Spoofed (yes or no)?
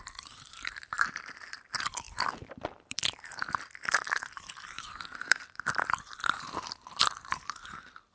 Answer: yes